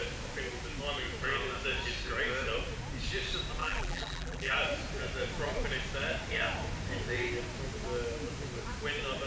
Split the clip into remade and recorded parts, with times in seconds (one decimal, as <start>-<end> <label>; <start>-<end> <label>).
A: 0.0-3.6 recorded; 3.6-4.5 remade; 4.5-9.3 recorded